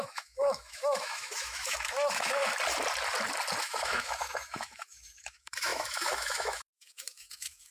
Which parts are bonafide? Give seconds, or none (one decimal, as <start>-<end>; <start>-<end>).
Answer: 2.4-3.6